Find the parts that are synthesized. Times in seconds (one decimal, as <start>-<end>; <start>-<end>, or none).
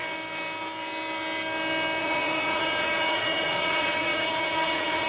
2.0-5.1